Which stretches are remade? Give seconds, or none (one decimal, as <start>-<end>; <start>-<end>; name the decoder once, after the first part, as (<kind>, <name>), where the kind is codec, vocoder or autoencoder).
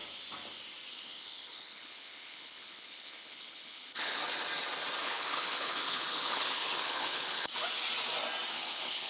0.9-4.2 (codec, HILCodec); 5.0-7.5; 8.5-9.1